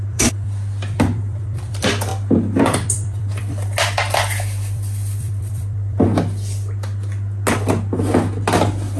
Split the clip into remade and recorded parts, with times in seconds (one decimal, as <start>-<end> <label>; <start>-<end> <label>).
0.0-6.1 remade; 6.1-9.0 recorded